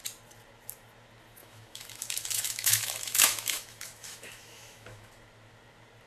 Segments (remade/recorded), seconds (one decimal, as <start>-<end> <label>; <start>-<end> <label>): 0.0-1.4 recorded; 1.4-5.1 remade; 5.1-6.1 recorded